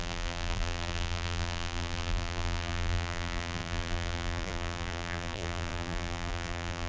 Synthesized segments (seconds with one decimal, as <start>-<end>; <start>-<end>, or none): 0.0-6.9